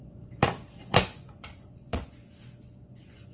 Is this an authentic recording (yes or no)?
no